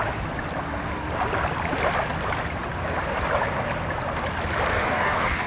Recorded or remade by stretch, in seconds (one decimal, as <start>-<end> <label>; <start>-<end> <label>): 0.0-4.7 recorded; 4.7-5.5 remade